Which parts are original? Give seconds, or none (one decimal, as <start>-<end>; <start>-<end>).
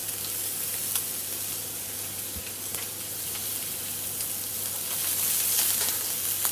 0.0-2.7; 3.4-6.5